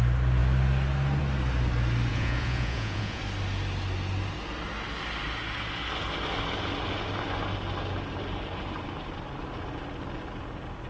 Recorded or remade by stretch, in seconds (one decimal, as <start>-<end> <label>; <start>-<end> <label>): 0.0-2.1 recorded; 2.1-3.2 remade; 3.2-10.9 recorded